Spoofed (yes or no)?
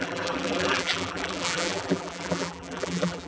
yes